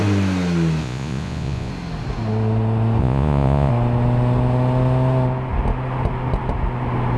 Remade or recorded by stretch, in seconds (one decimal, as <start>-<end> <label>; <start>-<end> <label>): 0.0-0.8 recorded; 0.8-1.7 remade; 1.7-3.0 recorded; 3.0-3.7 remade; 3.7-7.2 recorded

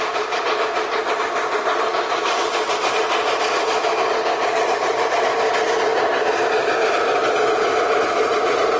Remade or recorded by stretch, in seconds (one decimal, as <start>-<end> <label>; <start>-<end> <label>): 0.0-5.9 recorded; 5.9-7.3 remade; 7.3-8.8 recorded

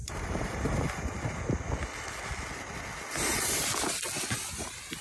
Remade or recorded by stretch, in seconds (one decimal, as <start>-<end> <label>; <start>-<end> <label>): 0.0-1.4 remade; 1.4-5.0 recorded

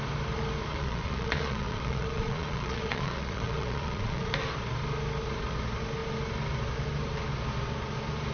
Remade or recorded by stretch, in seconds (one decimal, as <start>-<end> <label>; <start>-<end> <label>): 0.0-0.7 recorded; 0.7-4.3 remade; 4.3-8.3 recorded